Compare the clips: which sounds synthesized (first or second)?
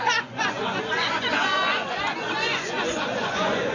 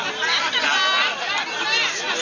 first